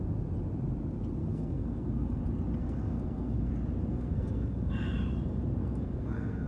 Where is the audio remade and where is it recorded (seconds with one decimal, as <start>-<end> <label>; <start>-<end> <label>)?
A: 0.0-1.2 recorded; 1.2-2.2 remade; 2.2-2.6 recorded; 2.6-3.5 remade; 3.5-3.9 recorded; 3.9-4.7 remade; 4.7-5.6 recorded; 5.6-6.5 remade